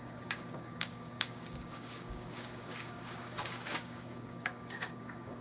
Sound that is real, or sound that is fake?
fake